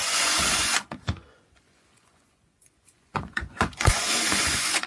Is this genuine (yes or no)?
no